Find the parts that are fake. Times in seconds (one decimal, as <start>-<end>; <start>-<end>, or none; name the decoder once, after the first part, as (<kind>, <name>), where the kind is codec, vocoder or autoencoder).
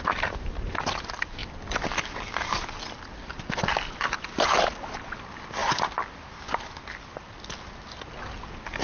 none